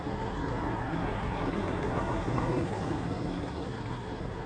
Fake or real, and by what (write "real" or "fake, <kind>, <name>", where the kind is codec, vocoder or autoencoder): fake, codec, SNAC